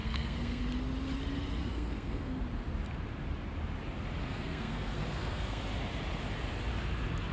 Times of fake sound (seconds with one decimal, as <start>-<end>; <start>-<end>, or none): 0.0-0.6; 1.6-2.4; 4.2-5.6